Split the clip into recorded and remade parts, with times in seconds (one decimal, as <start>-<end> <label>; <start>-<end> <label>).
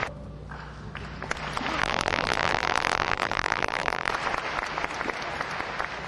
0.0-1.8 recorded; 1.8-4.1 remade; 4.1-6.1 recorded